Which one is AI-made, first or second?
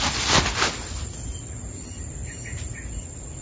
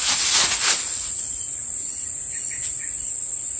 second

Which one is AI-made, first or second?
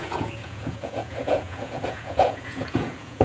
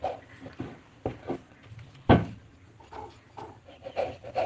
first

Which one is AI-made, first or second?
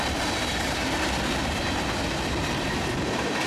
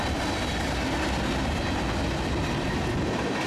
first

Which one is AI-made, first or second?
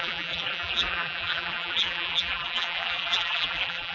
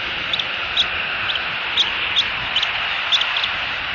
first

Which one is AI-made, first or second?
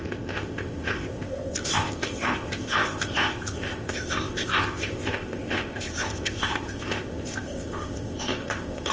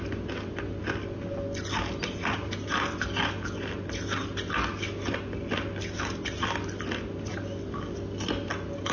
first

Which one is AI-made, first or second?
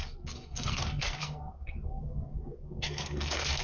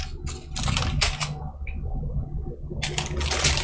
first